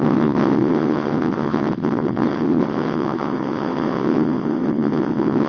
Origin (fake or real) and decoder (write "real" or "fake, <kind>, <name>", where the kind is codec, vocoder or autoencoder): fake, vocoder, WaveNeXt